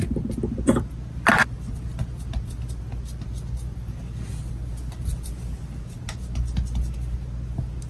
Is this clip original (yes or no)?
yes